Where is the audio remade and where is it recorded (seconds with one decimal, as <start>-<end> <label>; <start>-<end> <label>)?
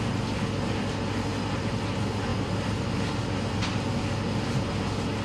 0.0-5.2 recorded